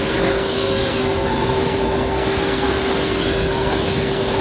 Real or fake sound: fake